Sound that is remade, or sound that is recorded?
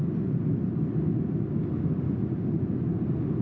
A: recorded